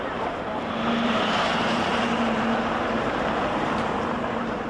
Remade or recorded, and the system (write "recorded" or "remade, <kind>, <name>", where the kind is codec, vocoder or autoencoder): remade, vocoder, BigVGAN v2